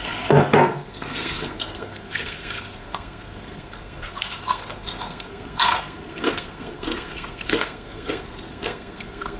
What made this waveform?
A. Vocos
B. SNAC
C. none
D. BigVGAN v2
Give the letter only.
B